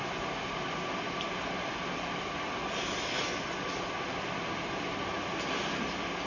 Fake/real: real